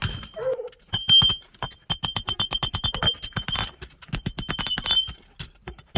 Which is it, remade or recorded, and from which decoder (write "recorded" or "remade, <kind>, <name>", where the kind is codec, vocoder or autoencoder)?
recorded